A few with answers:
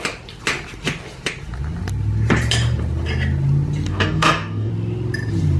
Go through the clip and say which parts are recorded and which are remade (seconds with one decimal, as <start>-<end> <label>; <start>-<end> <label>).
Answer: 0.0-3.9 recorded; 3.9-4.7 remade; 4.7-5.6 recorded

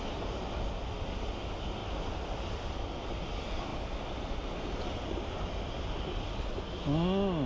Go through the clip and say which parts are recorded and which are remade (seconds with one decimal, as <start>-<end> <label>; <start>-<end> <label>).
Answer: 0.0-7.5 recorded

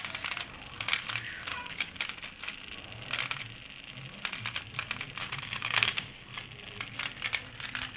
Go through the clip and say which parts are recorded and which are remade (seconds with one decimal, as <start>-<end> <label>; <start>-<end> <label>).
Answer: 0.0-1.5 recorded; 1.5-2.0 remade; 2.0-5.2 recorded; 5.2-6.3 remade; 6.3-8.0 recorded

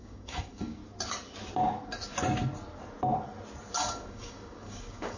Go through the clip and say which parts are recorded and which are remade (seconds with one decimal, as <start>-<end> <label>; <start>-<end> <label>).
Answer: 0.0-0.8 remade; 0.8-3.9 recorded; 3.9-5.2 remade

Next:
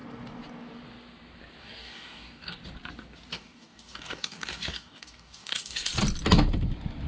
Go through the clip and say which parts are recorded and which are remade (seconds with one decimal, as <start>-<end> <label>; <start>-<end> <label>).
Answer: 0.0-1.6 recorded; 1.6-2.6 remade; 2.6-3.3 recorded; 3.3-5.9 remade; 5.9-7.1 recorded